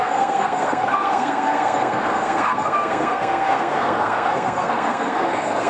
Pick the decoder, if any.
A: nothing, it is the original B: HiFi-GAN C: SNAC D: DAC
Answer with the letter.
C